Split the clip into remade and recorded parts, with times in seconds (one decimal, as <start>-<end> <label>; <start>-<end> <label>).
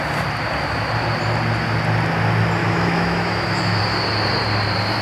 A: 0.0-2.6 recorded; 2.6-3.8 remade; 3.8-5.0 recorded